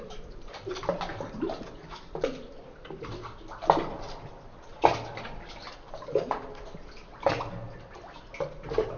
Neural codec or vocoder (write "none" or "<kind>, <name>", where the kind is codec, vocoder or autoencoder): none